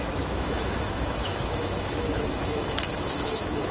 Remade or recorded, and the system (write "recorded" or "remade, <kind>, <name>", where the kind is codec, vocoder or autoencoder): remade, autoencoder, DAC-VAE